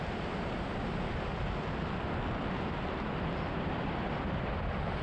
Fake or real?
real